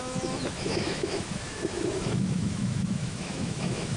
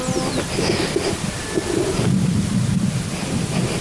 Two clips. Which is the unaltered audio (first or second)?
second